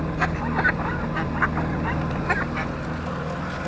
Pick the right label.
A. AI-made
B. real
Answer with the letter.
B